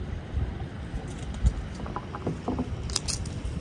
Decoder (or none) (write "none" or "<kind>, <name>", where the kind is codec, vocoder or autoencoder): none